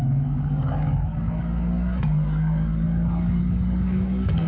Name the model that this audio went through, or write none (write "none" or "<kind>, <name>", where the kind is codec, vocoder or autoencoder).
codec, DAC